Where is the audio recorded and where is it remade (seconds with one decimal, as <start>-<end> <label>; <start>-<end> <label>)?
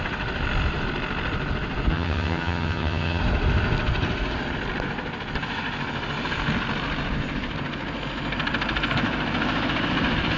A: 0.0-1.9 recorded; 1.9-3.2 remade; 3.2-10.4 recorded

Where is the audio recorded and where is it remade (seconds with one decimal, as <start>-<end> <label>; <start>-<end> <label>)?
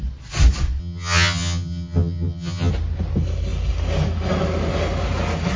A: 0.0-0.8 recorded; 0.8-2.7 remade; 2.7-5.6 recorded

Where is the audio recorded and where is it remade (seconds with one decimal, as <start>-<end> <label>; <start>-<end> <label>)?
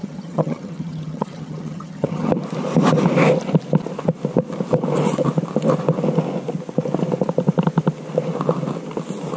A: 0.0-2.3 remade; 2.3-9.4 recorded